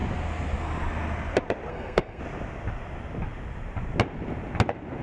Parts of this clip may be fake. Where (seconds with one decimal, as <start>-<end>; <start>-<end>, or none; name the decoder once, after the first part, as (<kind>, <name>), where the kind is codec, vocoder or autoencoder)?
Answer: 1.7-2.2 (codec, SNAC)